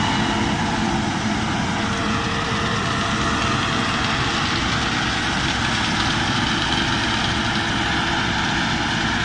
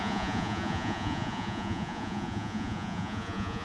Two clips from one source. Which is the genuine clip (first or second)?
first